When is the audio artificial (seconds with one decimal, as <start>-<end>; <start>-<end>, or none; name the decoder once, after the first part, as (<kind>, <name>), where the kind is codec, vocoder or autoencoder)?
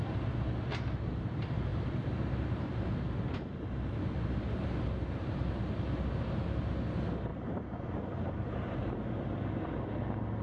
1.7-2.7 (vocoder, BigVGAN v2); 7.3-9.0